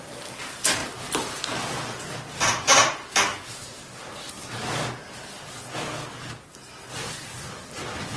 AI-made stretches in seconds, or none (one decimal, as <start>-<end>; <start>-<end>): none